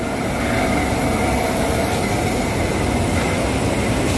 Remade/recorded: recorded